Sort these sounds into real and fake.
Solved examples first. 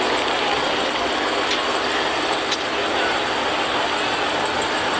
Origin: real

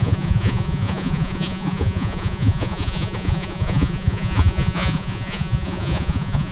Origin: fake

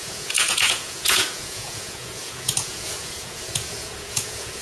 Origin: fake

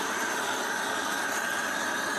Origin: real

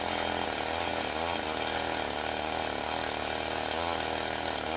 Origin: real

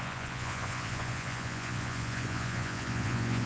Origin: fake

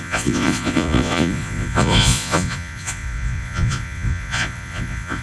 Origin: fake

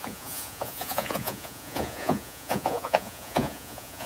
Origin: fake